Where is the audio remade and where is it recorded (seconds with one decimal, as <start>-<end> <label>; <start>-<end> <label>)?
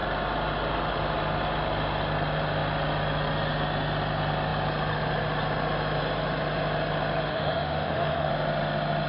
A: 0.0-7.3 recorded; 7.3-8.3 remade; 8.3-9.1 recorded